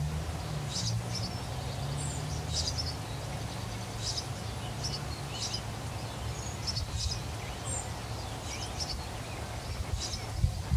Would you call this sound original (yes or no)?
yes